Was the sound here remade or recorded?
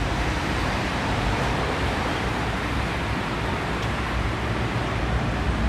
remade